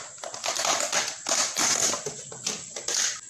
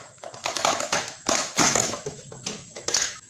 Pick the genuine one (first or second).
first